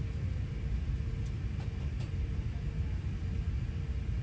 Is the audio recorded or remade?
recorded